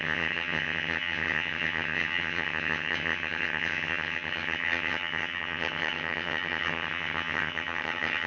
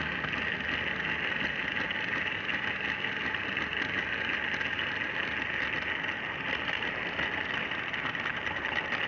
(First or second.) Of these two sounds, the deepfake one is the first